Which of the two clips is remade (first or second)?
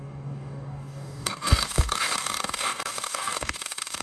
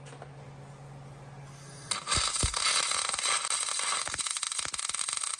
first